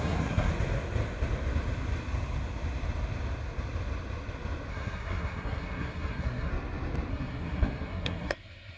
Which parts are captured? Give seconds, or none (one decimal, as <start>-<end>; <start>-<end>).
0.5-4.7; 6.5-7.1